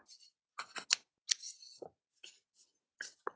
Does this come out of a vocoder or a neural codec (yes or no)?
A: no